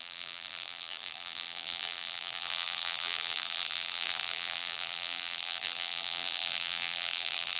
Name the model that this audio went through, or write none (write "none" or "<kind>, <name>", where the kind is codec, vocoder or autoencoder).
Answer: vocoder, BigVGAN v2